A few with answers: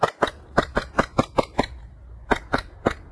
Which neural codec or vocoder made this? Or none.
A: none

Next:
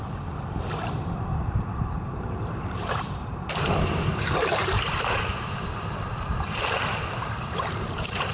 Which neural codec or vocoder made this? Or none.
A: vocoder, BigVGAN v2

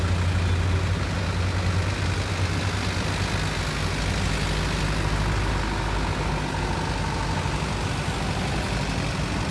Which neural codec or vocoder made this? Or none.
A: none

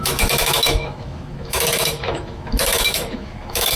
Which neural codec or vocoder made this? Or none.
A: autoencoder, DAC-VAE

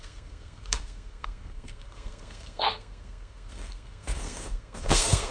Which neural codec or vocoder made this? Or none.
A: codec, SNAC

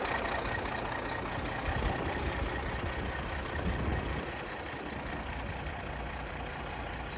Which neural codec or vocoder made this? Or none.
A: none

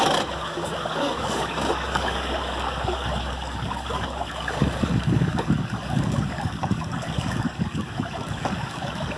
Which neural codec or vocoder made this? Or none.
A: codec, DAC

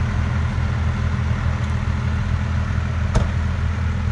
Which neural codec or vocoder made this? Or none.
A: none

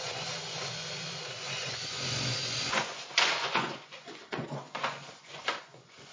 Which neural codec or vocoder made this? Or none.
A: vocoder, Vocos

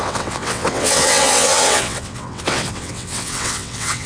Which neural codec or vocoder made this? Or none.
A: vocoder, WaveNeXt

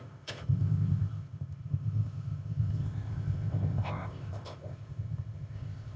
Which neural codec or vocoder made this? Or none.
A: codec, ZipCodec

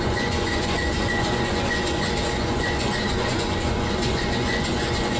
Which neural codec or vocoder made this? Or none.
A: vocoder, Vocos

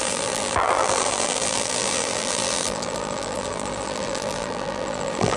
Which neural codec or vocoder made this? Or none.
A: vocoder, BigVGAN v2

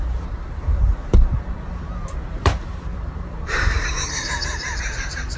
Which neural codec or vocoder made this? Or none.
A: vocoder, BigVGAN v2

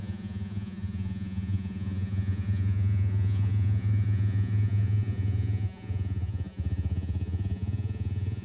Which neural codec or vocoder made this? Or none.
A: vocoder, Vocos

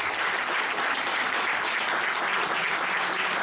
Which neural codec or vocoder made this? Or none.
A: none